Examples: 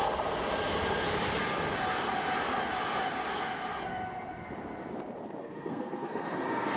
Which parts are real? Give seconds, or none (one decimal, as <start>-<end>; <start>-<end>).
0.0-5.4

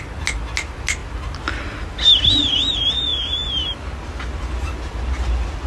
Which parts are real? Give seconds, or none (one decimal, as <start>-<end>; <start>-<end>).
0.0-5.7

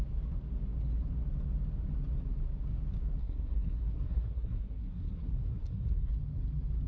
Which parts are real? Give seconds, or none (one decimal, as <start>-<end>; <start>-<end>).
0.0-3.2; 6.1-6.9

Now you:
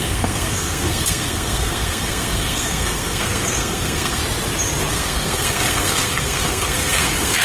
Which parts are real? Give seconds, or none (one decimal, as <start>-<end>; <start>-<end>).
4.2-4.9